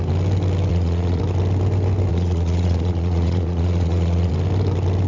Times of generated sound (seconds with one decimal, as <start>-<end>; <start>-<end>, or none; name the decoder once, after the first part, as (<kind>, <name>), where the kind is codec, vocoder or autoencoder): 0.7-1.2 (vocoder, Vocos); 2.1-4.3